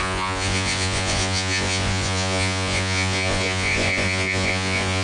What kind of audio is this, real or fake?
fake